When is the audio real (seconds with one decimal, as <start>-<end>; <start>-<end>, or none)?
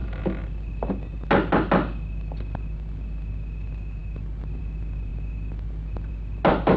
0.0-6.8